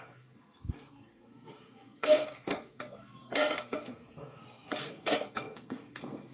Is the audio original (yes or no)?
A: no